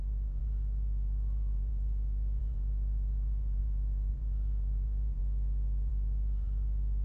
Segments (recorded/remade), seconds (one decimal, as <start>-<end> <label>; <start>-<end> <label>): 0.0-5.2 remade; 5.2-5.9 recorded; 5.9-7.0 remade